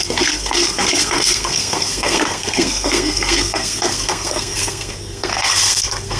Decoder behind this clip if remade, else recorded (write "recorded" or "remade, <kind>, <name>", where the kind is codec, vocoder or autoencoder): remade, codec, SNAC